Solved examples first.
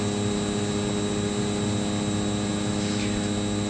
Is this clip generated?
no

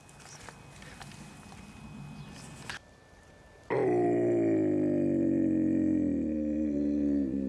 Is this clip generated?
no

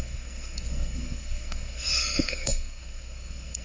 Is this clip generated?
yes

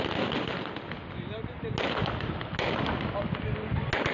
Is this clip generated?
no